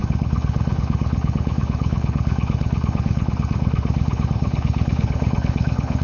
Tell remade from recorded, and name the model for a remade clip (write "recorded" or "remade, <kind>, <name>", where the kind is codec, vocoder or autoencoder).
remade, codec, HILCodec